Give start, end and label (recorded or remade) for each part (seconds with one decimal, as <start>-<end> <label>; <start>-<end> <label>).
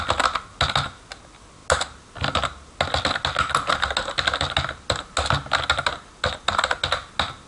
0.0-7.5 recorded